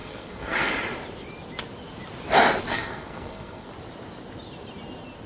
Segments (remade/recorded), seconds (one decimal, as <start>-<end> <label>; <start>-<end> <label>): 0.0-0.7 remade; 0.7-2.7 recorded; 2.7-3.7 remade; 3.7-5.3 recorded